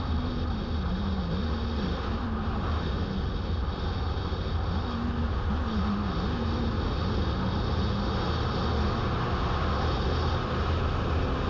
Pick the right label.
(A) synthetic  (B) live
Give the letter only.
B